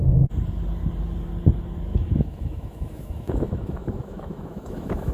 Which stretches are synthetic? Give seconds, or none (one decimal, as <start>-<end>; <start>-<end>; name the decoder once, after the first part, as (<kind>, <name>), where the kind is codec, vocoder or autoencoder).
1.9-5.1 (autoencoder, DAC-VAE)